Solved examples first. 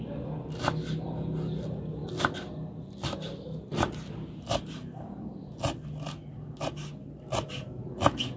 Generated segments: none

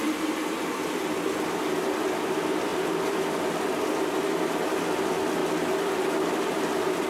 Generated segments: 2.7-3.7; 5.4-6.0

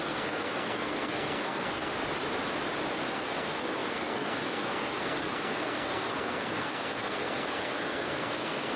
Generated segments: 0.0-1.9; 3.1-8.8

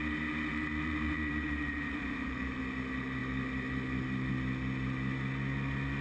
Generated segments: 0.5-2.6